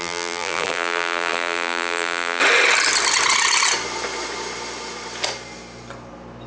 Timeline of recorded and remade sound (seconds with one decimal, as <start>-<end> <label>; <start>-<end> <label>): 0.0-2.4 remade; 2.4-6.5 recorded